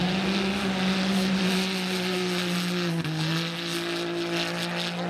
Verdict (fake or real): real